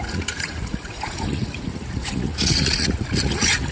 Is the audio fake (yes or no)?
yes